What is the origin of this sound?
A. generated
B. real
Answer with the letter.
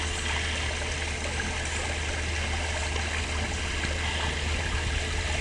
B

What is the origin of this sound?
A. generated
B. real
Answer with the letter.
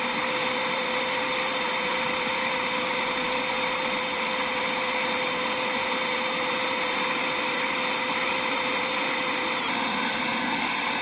B